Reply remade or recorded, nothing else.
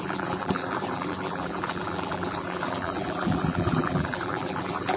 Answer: remade